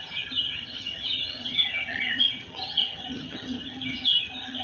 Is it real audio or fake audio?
fake